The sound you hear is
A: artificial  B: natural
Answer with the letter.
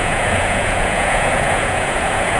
A